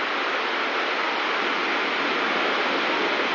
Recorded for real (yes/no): yes